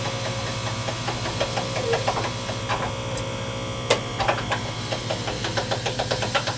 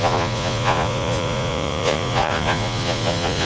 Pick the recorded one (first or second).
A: first